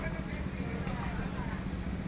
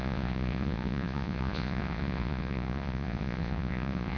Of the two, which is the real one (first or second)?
first